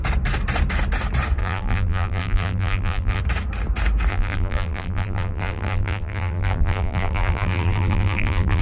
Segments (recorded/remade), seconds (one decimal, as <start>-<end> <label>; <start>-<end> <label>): 0.0-1.4 recorded; 1.4-3.2 remade; 3.2-4.1 recorded; 4.1-8.6 remade